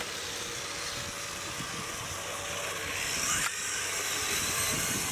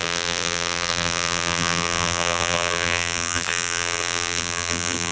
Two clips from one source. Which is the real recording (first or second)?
first